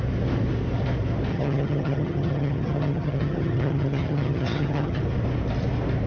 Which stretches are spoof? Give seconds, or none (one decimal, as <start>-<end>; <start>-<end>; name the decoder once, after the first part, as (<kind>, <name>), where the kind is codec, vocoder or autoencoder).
1.3-5.0 (vocoder, HiFi-GAN)